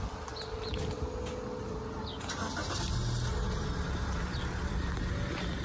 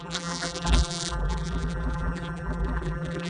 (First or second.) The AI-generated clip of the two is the second